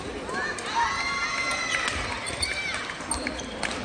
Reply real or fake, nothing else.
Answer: real